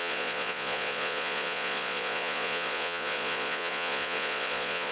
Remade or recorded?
remade